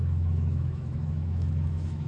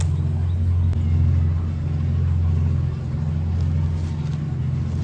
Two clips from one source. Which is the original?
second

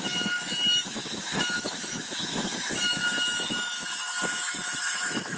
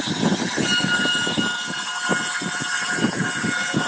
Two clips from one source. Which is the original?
second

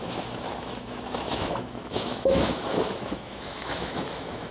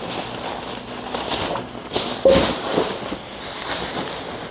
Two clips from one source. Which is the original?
second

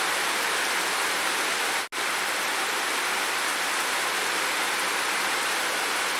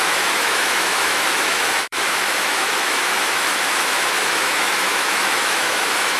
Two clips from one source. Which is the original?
first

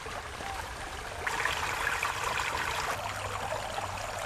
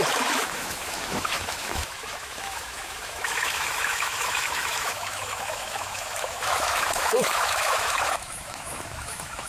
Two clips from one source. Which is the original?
first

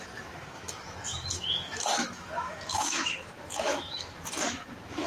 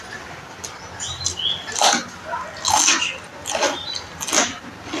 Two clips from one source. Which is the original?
second